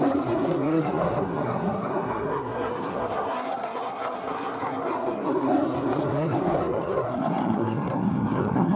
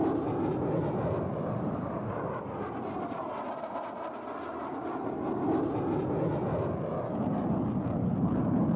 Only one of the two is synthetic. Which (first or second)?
first